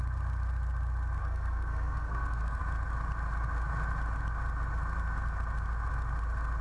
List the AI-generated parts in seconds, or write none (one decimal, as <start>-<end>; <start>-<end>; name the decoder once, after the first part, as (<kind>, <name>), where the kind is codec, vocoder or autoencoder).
1.2-2.6 (codec, SNAC)